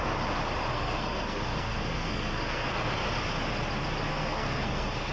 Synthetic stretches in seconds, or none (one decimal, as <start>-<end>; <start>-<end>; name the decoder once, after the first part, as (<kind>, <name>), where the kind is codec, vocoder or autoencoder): 0.7-2.7 (codec, SNAC); 4.1-5.1